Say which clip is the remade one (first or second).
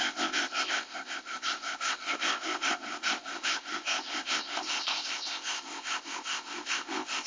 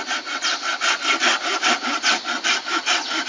first